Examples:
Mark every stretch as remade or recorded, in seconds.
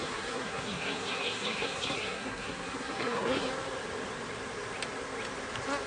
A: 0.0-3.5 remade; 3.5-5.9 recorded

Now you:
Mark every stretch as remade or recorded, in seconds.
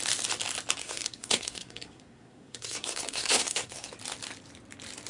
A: 0.0-0.8 recorded; 0.8-3.9 remade; 3.9-5.1 recorded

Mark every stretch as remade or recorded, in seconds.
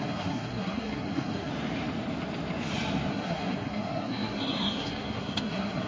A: 0.0-1.5 remade; 1.5-3.1 recorded; 3.1-5.9 remade